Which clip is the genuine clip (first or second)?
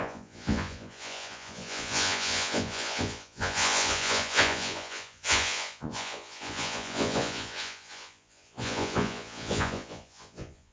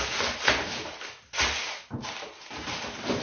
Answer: second